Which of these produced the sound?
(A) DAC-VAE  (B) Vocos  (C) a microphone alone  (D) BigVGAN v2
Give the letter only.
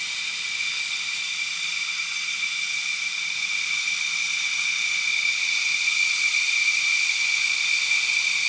C